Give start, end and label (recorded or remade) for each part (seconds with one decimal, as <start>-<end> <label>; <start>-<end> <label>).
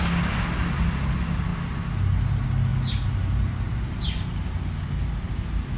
0.0-5.8 recorded